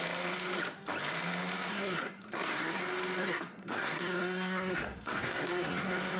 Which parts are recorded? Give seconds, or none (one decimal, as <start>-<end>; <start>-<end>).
0.0-1.7; 2.8-3.2